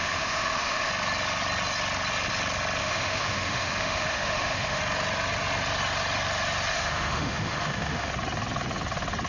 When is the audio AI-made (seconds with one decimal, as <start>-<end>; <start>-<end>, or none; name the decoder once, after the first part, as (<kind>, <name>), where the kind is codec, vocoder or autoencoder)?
0.0-0.9 (autoencoder, DAC-VAE); 2.8-4.8; 6.7-8.1